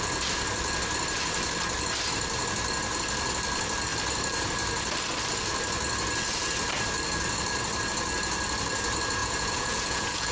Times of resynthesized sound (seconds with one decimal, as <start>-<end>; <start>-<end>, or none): 9.2-10.3